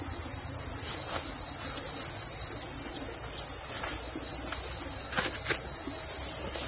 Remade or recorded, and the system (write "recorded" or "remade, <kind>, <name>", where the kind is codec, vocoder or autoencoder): recorded